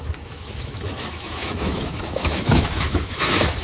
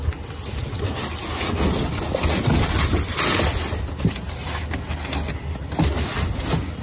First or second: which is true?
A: second